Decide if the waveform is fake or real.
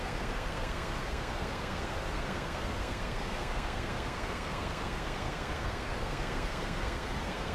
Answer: fake